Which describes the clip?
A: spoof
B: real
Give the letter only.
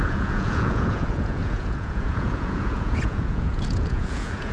A